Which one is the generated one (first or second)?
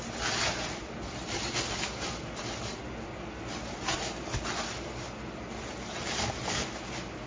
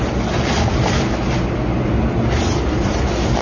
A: second